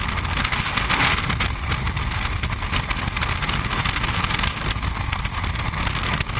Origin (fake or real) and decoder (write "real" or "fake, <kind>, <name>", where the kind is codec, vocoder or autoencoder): real